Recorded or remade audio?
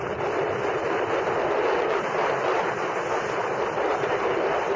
recorded